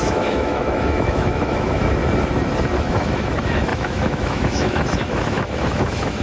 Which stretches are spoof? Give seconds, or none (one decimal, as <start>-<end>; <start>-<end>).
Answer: 0.0-2.0; 2.9-6.2